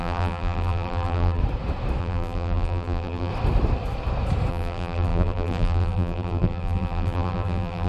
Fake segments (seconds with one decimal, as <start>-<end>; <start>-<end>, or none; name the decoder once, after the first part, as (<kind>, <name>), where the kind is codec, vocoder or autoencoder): 0.0-1.4 (vocoder, BigVGAN v2); 2.0-3.3; 4.5-7.9